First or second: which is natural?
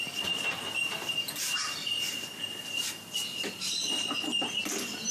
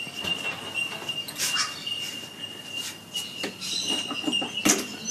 second